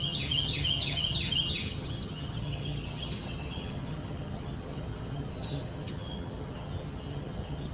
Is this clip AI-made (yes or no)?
yes